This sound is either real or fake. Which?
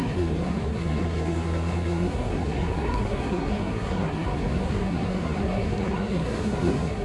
fake